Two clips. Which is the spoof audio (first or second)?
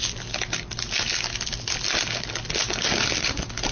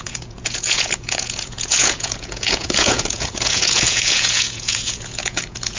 second